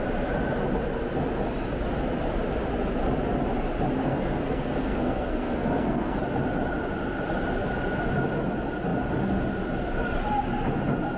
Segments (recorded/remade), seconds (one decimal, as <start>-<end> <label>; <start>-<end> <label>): 0.0-4.0 recorded; 4.0-6.2 remade; 6.2-11.2 recorded